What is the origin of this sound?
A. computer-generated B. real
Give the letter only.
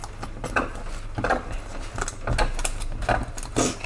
B